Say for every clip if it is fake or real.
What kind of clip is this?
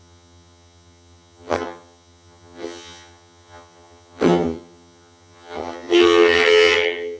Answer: fake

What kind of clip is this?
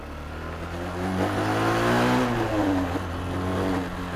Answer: real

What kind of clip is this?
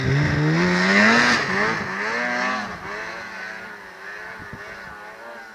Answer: real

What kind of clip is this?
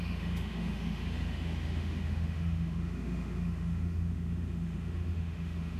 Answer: fake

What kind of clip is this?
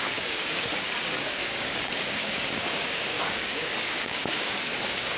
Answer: fake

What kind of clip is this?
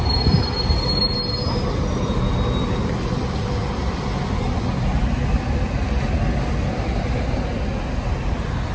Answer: real